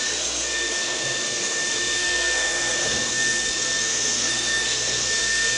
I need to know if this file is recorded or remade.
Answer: remade